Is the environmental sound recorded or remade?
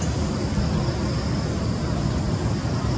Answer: recorded